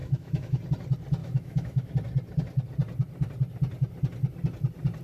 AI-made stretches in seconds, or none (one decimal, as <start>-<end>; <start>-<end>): 0.0-0.6; 1.2-1.9